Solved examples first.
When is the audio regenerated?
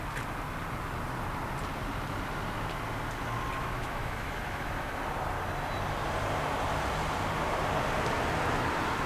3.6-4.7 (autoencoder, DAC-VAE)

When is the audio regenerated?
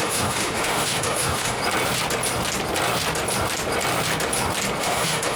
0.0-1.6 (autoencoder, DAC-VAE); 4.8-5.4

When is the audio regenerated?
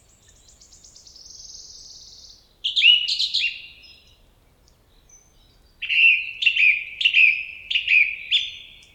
none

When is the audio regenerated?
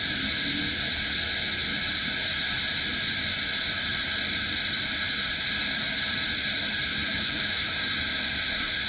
7.0-7.7 (autoencoder, DAC-VAE)